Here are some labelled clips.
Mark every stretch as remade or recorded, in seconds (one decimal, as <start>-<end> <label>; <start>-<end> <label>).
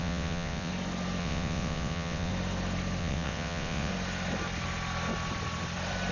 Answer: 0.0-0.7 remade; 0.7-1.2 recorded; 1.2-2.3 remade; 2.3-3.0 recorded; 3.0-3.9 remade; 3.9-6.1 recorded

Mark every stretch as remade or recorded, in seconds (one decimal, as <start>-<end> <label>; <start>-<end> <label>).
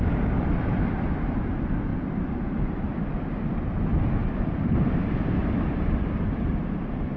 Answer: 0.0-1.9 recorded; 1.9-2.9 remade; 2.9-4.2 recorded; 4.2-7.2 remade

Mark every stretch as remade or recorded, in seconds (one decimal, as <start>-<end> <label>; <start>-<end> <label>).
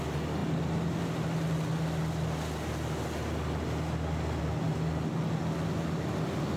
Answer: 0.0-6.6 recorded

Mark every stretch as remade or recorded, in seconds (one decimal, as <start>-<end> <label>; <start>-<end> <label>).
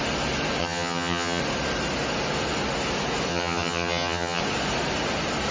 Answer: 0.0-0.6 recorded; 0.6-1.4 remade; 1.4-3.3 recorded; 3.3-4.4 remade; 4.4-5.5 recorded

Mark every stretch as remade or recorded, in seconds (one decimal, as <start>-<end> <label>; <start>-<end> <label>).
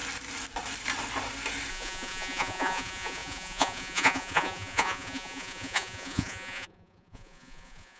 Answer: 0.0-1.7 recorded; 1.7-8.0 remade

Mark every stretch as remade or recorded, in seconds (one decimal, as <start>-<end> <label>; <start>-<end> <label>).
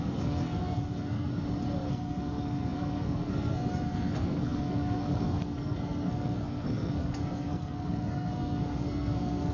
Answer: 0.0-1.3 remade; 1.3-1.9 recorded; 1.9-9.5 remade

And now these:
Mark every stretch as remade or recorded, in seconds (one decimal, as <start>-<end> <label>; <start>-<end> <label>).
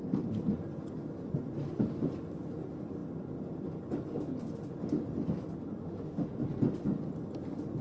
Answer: 0.0-5.8 recorded; 5.8-6.3 remade; 6.3-7.8 recorded